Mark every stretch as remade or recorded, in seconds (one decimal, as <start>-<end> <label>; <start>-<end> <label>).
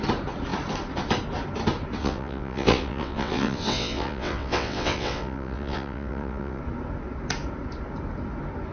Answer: 0.0-2.0 recorded; 2.0-6.6 remade; 6.6-8.7 recorded